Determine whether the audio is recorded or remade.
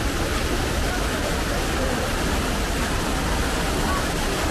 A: recorded